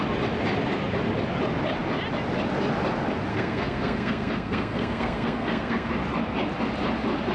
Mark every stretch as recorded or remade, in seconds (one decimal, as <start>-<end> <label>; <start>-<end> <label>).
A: 0.0-3.3 recorded; 3.3-5.9 remade; 5.9-7.3 recorded